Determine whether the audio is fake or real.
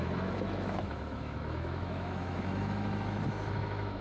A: fake